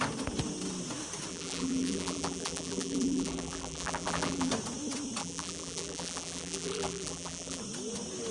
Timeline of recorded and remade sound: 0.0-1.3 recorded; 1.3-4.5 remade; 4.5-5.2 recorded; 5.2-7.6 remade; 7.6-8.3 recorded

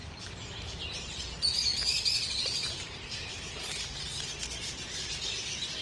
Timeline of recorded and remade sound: 0.0-0.8 remade; 0.8-1.7 recorded; 1.7-4.3 remade; 4.3-5.8 recorded

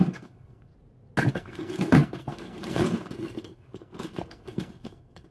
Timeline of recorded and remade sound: 0.0-0.7 remade; 0.7-1.3 recorded; 1.3-5.3 remade

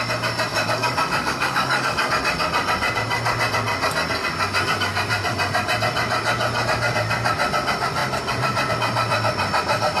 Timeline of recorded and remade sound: 0.0-0.5 recorded; 0.5-2.1 remade; 2.1-10.0 recorded

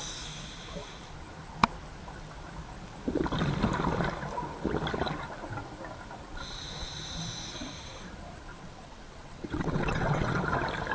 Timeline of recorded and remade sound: 0.0-8.5 recorded; 8.5-10.4 remade; 10.4-10.9 recorded